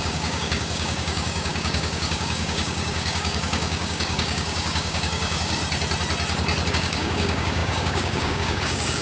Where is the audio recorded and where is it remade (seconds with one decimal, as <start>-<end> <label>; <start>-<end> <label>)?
0.0-5.6 remade; 5.6-6.7 recorded; 6.7-9.0 remade